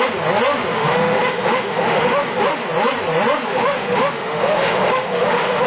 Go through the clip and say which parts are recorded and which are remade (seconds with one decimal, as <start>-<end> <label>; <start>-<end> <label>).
0.0-0.7 recorded; 0.7-2.5 remade; 2.5-3.5 recorded; 3.5-5.7 remade